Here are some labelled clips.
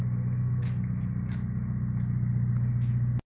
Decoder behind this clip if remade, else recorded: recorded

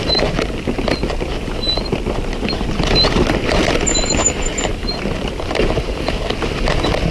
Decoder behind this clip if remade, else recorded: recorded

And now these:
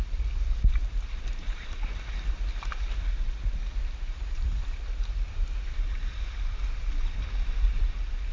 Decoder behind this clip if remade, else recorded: recorded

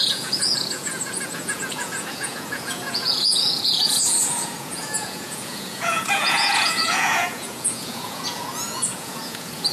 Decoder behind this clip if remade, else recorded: remade, vocoder, Vocos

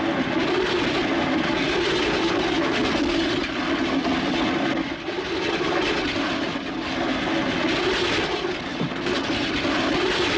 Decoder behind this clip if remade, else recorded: recorded